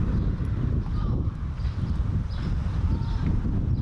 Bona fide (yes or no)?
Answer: no